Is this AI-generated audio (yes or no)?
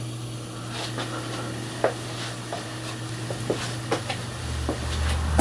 no